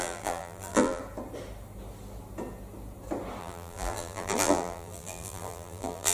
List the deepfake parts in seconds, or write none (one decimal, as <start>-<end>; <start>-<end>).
0.0-1.0; 3.4-6.1